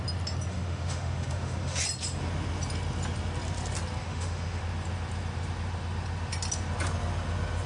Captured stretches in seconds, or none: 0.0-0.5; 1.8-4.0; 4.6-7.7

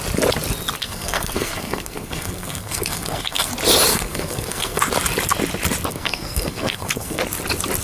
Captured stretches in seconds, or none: 0.0-0.8; 3.5-3.9; 4.8-5.9; 7.2-7.8

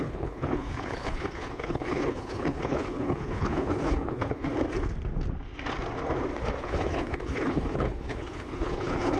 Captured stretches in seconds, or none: 4.5-6.6

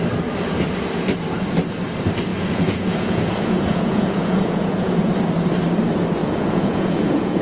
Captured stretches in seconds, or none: 0.0-2.3; 5.1-6.2